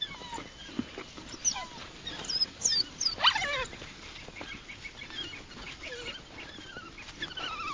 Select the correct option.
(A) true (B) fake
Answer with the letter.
A